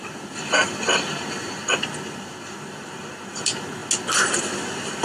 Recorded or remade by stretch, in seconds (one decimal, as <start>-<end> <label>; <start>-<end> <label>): 0.0-3.8 remade; 3.8-4.5 recorded; 4.5-5.0 remade

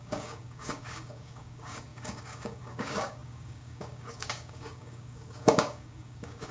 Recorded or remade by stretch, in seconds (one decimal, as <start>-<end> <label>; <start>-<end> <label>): 0.0-6.5 remade

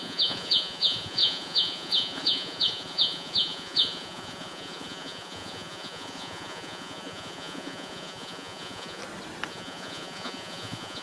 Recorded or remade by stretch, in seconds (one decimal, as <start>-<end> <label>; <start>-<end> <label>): 0.0-9.0 remade; 9.0-9.5 recorded; 9.5-11.0 remade

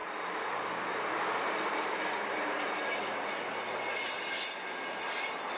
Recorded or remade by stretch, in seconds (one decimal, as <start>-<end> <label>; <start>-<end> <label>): 0.0-5.6 recorded

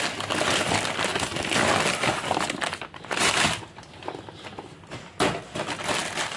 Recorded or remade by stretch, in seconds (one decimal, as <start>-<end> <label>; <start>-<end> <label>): 0.0-6.4 recorded

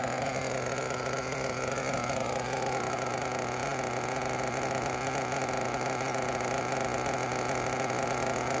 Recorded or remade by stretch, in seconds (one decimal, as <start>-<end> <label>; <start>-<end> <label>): 0.0-8.6 recorded

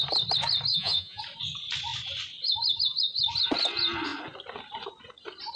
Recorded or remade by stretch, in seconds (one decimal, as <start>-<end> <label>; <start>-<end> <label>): 0.0-0.7 recorded; 0.7-1.2 remade; 1.2-5.6 recorded